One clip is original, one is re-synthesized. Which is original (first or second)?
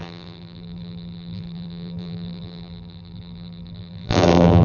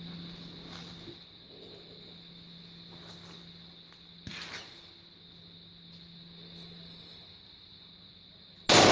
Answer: second